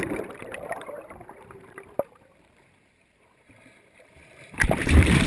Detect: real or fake fake